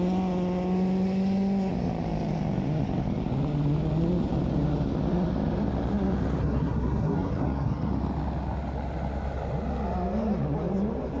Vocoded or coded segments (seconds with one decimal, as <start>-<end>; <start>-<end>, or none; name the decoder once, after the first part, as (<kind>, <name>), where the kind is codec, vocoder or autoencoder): 6.4-7.9 (codec, SNAC)